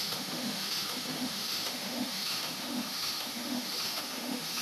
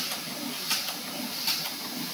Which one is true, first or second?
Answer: second